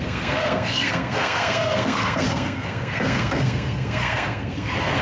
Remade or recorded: remade